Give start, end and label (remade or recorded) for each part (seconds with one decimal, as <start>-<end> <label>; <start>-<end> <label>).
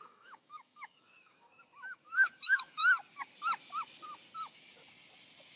0.0-2.8 remade; 2.8-5.6 recorded